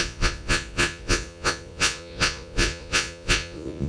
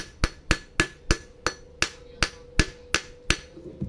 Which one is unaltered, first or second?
second